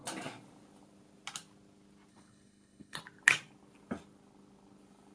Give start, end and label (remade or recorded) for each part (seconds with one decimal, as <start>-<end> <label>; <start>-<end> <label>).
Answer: 0.0-2.1 recorded; 2.1-3.0 remade; 3.0-5.1 recorded